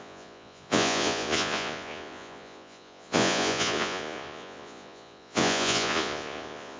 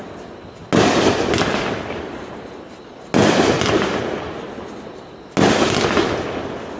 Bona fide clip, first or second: second